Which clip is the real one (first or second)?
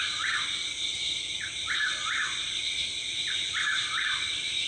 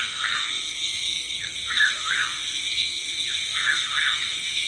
first